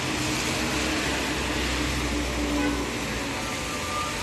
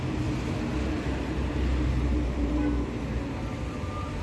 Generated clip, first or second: second